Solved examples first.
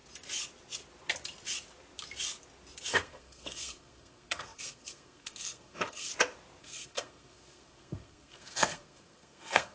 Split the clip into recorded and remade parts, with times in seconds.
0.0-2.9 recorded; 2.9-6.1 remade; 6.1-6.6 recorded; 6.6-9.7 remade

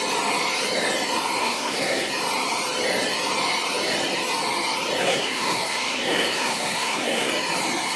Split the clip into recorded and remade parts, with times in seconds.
0.0-1.4 recorded; 1.4-2.1 remade; 2.1-5.0 recorded; 5.0-7.3 remade; 7.3-8.0 recorded

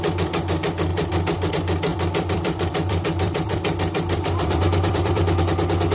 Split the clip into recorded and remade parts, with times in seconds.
0.0-0.9 recorded; 0.9-1.5 remade; 1.5-1.9 recorded; 1.9-5.4 remade; 5.4-5.9 recorded

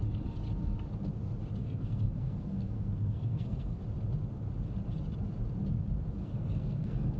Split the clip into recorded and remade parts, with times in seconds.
0.0-1.6 recorded; 1.6-3.8 remade; 3.8-6.2 recorded; 6.2-7.2 remade